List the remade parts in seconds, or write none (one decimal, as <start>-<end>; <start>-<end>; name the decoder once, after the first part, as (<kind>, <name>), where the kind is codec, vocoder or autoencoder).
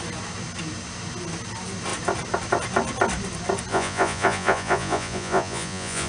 3.7-6.1 (vocoder, Vocos)